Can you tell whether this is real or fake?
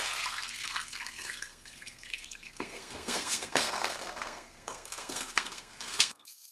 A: fake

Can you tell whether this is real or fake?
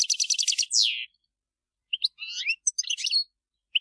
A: real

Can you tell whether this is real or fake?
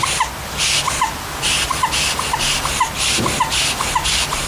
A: real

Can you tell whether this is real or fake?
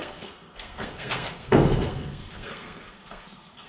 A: fake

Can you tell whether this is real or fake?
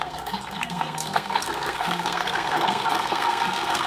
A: fake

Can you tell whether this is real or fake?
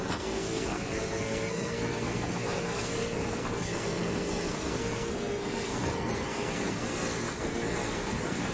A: fake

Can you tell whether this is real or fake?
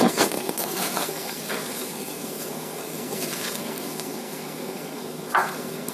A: fake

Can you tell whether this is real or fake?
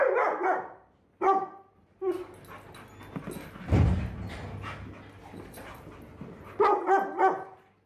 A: real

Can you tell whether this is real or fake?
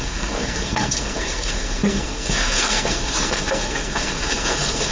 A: fake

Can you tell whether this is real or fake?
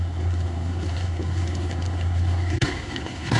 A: fake